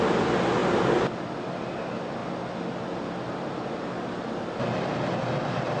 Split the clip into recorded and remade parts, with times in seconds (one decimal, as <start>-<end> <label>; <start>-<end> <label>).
0.0-5.8 recorded

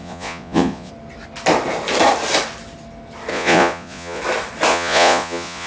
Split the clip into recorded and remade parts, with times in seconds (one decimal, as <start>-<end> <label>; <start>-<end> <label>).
0.0-0.9 remade; 0.9-3.3 recorded; 3.3-4.2 remade; 4.2-4.7 recorded; 4.7-5.7 remade

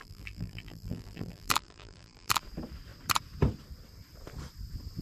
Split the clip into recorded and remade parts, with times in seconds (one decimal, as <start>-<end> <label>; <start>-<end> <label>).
0.0-2.4 remade; 2.4-5.0 recorded

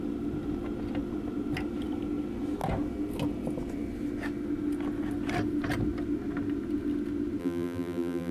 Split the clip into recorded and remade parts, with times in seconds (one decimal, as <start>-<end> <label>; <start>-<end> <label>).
0.0-7.4 recorded; 7.4-8.3 remade